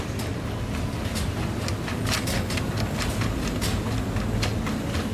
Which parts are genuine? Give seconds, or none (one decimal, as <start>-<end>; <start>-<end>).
1.7-2.6; 3.7-4.3